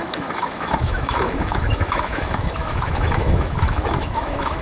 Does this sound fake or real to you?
fake